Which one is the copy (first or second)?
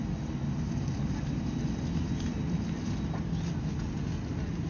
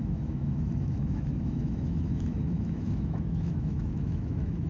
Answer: second